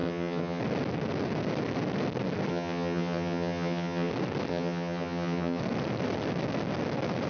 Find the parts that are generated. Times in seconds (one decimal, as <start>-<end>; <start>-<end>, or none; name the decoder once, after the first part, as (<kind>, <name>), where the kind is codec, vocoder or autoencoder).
0.0-0.6 (vocoder, HiFi-GAN); 2.5-4.1; 4.5-5.6